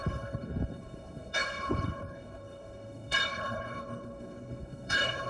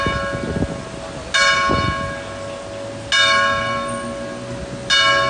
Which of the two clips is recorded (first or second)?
second